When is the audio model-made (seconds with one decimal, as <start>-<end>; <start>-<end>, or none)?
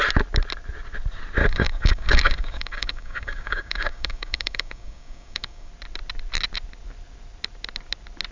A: 1.4-5.7